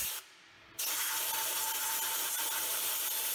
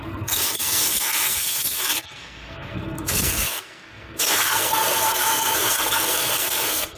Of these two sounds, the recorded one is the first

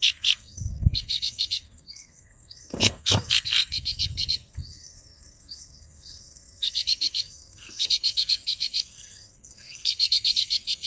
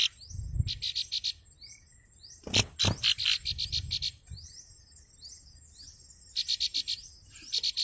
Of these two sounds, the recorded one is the second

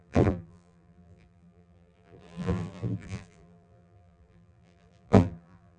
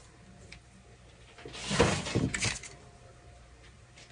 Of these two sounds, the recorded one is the second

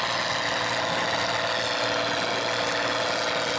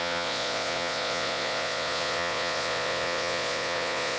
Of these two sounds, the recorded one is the first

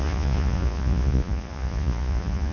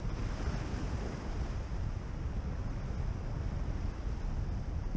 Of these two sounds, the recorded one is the second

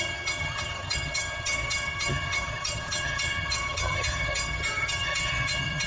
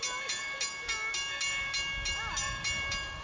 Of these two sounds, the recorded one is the second